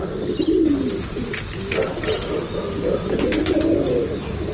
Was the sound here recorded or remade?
recorded